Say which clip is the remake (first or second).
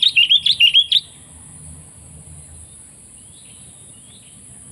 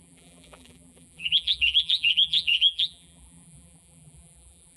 second